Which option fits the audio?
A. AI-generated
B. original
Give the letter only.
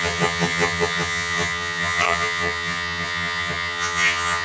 A